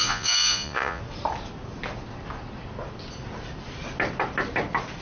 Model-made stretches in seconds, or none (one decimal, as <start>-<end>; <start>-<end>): 0.0-1.0